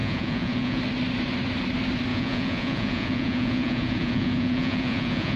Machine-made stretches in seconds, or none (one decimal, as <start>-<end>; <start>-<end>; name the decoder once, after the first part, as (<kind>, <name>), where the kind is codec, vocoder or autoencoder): 0.0-0.8 (vocoder, Vocos); 2.1-5.4